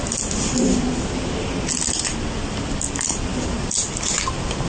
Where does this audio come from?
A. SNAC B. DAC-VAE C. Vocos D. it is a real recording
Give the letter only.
D